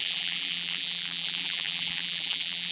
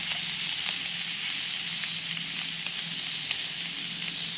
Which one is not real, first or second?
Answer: first